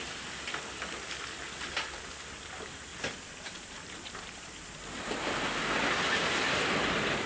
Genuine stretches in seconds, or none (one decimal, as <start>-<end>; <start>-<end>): 0.0-2.9; 5.6-7.3